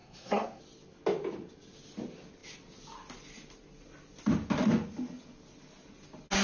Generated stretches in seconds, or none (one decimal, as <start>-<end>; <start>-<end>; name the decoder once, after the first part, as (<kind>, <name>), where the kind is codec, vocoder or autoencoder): 0.0-0.6 (codec, SNAC)